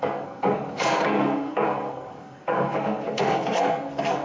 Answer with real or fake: fake